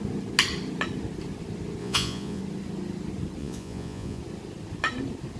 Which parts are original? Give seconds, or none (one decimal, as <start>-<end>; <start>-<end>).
0.0-1.8; 2.4-3.4; 4.2-5.4

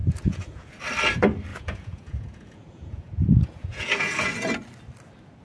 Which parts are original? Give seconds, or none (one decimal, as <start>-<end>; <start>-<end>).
0.7-1.5; 4.3-5.4

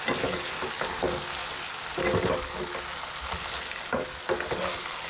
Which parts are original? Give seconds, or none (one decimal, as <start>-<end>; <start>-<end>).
0.0-5.1

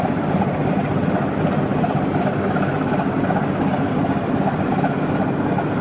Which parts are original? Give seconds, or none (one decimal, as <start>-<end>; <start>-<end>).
0.0-5.8

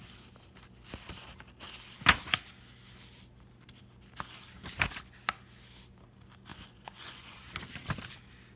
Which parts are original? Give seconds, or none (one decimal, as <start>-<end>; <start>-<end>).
0.0-6.5; 7.4-8.6